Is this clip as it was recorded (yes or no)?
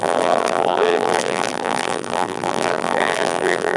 no